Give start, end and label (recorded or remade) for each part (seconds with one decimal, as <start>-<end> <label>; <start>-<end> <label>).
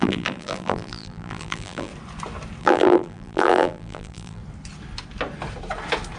0.0-1.9 remade; 1.9-2.6 recorded; 2.6-4.4 remade; 4.4-6.2 recorded